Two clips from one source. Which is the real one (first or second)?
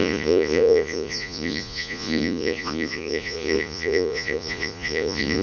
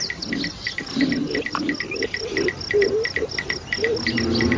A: second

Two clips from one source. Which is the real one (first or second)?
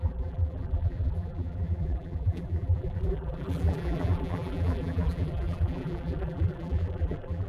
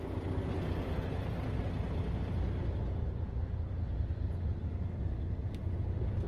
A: second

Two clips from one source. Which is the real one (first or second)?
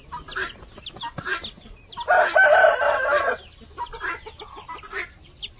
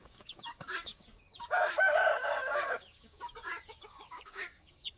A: first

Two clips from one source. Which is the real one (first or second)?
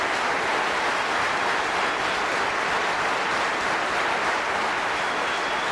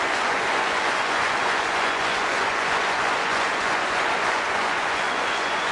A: first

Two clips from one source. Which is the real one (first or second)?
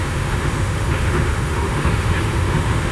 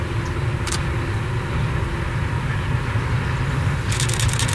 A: second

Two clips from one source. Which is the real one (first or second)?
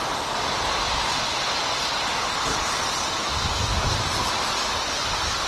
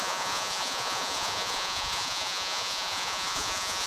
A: first